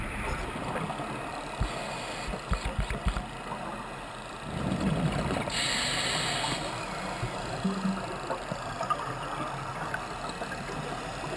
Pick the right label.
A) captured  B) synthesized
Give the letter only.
A